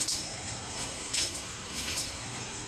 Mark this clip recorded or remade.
remade